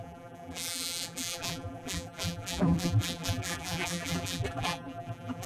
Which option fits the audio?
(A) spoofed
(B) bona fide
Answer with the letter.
A